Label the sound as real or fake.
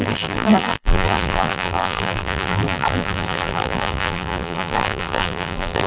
fake